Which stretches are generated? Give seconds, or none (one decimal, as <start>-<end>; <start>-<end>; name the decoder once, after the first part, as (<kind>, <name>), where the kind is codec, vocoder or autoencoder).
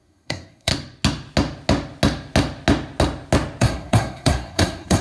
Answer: 0.0-0.7 (codec, SNAC); 3.6-5.0